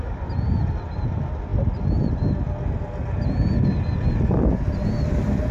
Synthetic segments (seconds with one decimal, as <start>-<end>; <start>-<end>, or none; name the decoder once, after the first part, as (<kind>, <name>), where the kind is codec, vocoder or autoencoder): none